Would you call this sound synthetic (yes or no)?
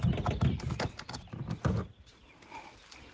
no